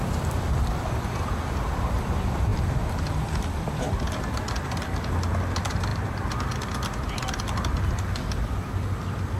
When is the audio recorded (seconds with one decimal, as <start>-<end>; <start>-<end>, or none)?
0.0-2.5; 5.0-9.4